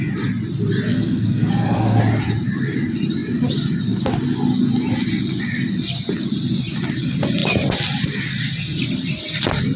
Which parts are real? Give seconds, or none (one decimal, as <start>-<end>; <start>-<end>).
0.0-0.9; 2.0-9.8